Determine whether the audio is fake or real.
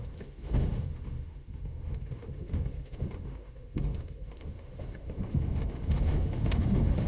fake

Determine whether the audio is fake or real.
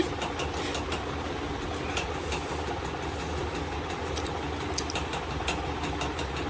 real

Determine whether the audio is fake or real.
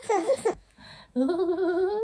fake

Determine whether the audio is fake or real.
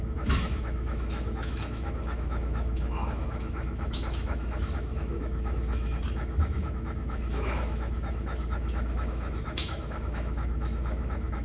fake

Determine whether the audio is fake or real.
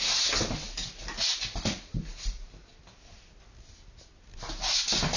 real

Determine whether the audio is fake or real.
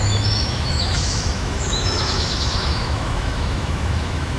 fake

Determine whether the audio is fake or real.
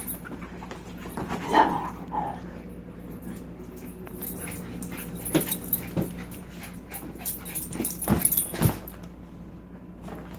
real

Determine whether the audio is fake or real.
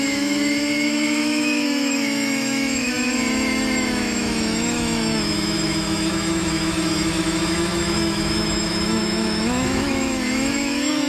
fake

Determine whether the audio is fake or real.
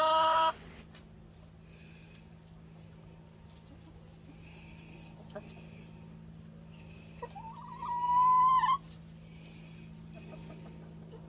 real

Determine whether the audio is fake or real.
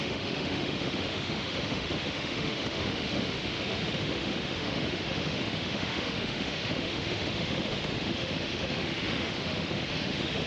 fake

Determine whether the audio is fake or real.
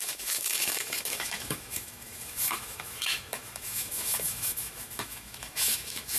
fake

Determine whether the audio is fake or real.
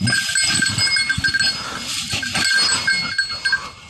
real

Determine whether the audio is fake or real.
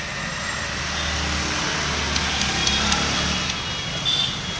real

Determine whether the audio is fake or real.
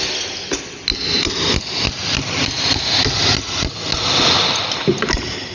real